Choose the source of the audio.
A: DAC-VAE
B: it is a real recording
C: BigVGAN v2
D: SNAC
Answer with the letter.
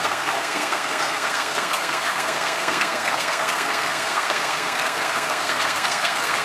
D